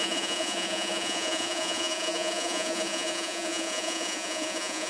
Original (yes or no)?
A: no